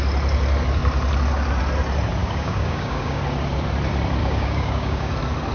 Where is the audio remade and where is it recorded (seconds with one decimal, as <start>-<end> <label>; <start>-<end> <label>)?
0.0-2.2 recorded; 2.2-3.2 remade; 3.2-4.2 recorded; 4.2-5.1 remade; 5.1-5.5 recorded